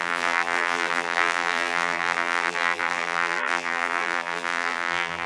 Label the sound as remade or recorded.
remade